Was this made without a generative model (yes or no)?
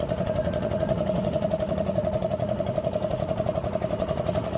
no